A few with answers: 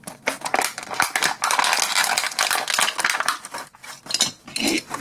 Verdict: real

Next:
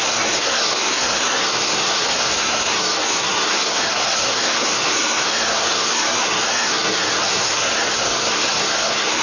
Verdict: fake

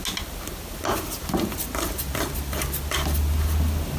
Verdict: real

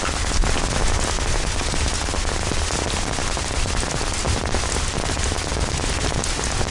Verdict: real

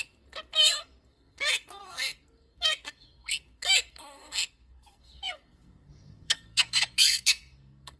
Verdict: fake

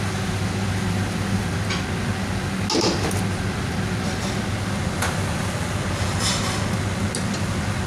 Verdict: real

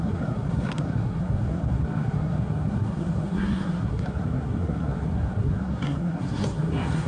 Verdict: fake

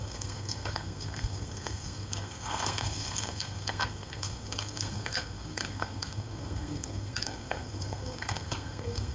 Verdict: fake